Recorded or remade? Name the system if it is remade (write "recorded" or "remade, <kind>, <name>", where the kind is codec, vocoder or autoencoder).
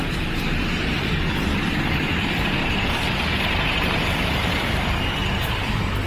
remade, vocoder, BigVGAN v2